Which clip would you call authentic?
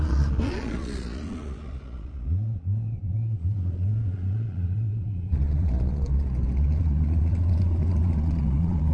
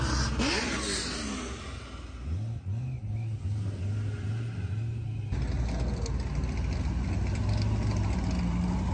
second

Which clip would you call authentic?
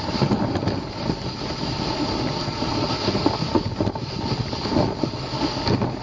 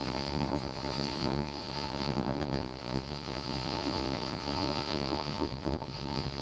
first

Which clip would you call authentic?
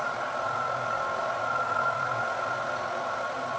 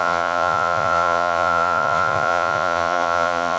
first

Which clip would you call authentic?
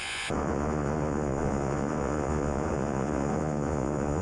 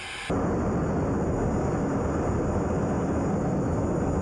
second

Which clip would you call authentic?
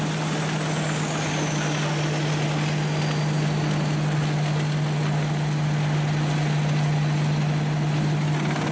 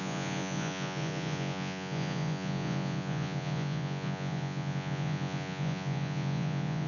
first